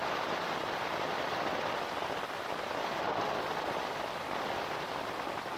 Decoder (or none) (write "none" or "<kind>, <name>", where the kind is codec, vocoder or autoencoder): none